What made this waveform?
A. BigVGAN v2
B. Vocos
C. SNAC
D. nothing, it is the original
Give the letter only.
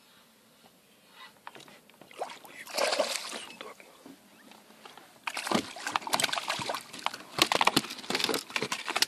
D